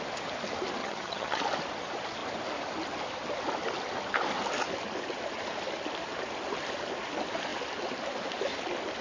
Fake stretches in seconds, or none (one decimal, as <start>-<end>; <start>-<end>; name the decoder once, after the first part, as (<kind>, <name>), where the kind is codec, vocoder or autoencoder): 0.8-1.4 (vocoder, HiFi-GAN)